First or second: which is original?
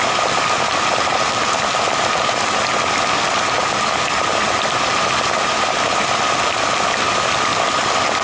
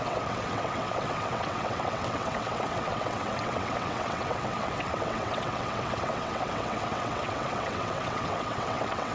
first